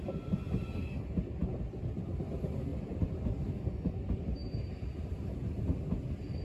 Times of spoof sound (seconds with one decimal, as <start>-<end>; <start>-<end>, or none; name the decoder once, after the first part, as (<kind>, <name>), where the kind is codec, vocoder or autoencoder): 2.7-3.4 (vocoder, BigVGAN v2)